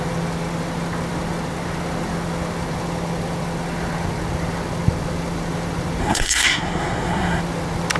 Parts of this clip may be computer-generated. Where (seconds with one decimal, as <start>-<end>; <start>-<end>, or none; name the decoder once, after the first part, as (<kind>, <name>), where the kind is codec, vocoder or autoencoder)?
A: 6.0-7.4 (codec, SNAC)